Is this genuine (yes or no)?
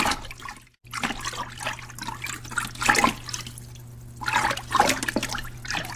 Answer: yes